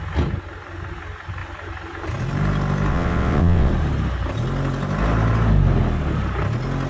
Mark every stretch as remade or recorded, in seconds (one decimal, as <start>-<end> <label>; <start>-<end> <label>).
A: 0.0-2.9 recorded; 2.9-3.7 remade; 3.7-6.9 recorded